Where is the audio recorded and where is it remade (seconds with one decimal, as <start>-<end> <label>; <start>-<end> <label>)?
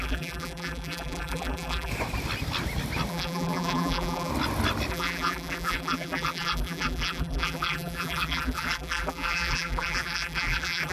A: 0.0-1.9 remade; 1.9-3.1 recorded; 3.1-4.3 remade; 4.3-4.9 recorded; 4.9-10.9 remade